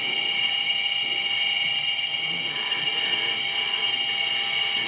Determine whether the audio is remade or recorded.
recorded